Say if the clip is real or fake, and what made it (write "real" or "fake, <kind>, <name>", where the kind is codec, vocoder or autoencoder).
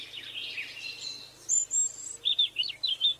real